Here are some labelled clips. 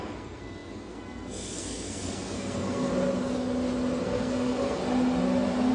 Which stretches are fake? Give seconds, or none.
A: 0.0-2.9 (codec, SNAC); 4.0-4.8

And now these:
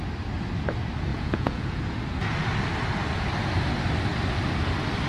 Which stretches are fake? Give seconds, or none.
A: 1.1-1.8 (vocoder, Vocos)

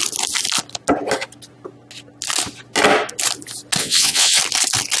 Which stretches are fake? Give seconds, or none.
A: 3.8-4.4 (vocoder, WaveNeXt)

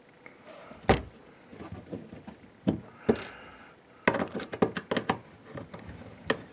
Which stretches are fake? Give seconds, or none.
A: none

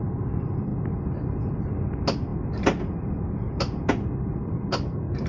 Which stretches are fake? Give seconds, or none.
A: none